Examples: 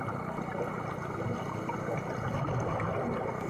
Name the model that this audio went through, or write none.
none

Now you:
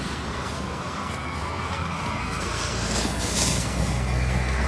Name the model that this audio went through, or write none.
codec, SNAC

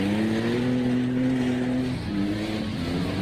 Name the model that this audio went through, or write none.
none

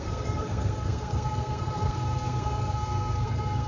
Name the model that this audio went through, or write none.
codec, SNAC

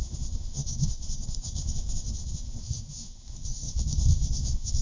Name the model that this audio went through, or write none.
codec, SNAC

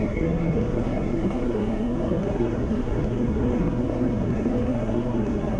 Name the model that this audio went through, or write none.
codec, SNAC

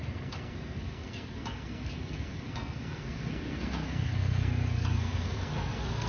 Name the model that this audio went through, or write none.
codec, SNAC